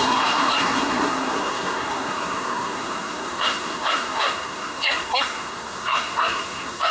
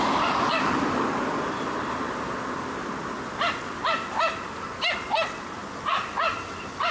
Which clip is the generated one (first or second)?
first